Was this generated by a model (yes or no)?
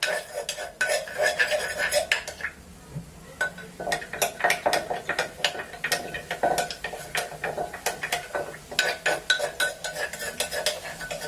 no